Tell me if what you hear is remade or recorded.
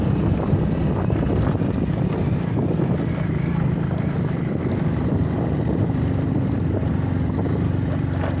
recorded